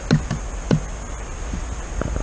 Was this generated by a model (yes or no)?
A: no